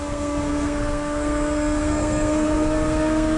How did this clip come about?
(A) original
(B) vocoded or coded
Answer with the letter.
B